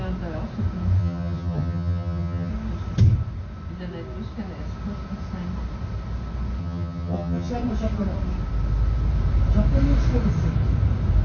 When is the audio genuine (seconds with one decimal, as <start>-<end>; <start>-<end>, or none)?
0.0-1.0; 2.5-6.6; 7.5-11.2